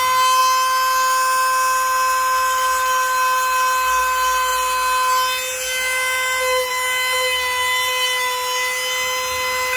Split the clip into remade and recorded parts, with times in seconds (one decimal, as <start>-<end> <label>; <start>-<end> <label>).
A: 0.0-9.8 recorded